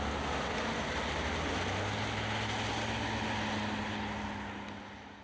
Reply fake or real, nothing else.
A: real